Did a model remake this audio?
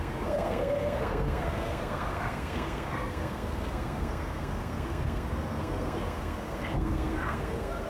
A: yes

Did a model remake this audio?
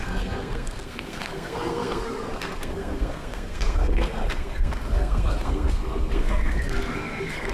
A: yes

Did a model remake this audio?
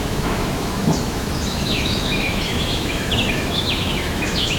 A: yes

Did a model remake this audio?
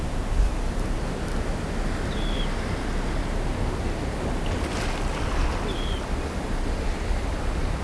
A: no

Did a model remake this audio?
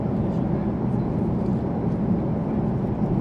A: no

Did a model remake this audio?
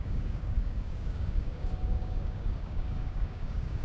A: yes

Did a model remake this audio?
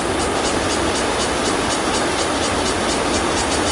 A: no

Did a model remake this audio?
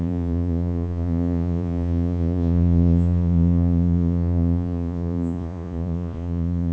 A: yes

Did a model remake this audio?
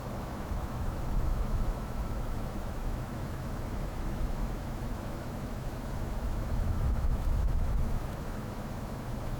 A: yes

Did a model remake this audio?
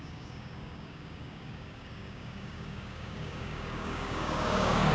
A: yes